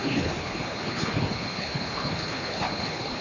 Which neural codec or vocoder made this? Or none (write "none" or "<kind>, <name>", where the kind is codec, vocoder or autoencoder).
codec, HILCodec